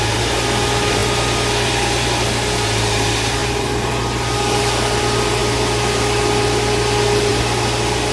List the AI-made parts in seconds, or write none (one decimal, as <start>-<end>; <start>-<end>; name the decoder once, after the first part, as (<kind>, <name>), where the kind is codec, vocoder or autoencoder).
3.4-5.0 (vocoder, BigVGAN v2); 5.4-6.0